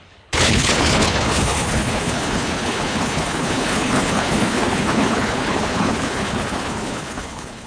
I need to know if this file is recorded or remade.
remade